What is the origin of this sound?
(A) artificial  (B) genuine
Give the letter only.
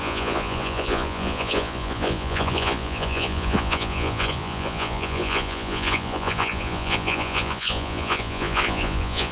A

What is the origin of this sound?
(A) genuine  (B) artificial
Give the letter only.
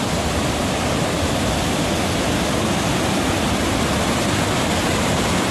A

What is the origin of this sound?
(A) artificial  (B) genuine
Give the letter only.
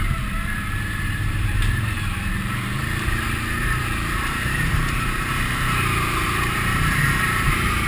A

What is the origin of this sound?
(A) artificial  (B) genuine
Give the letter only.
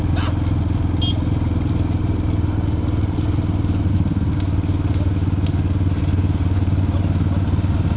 B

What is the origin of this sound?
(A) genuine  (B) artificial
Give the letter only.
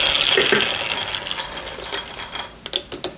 A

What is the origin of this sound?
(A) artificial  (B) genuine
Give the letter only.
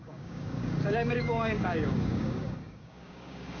A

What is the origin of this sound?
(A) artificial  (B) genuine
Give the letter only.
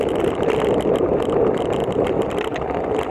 B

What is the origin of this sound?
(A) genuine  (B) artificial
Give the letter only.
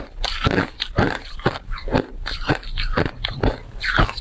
B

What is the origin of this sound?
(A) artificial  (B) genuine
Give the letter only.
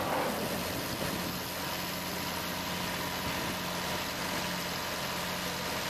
B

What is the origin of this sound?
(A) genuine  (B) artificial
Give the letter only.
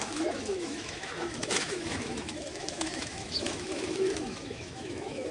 B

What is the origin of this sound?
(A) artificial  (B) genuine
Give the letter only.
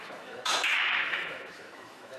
A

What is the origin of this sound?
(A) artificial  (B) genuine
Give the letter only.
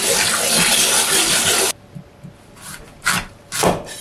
B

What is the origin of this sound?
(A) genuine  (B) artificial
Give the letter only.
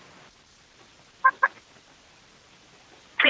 A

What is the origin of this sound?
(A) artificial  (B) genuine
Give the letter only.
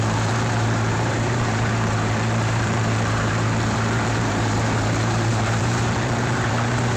A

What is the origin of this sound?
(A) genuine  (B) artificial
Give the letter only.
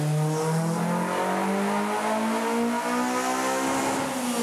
A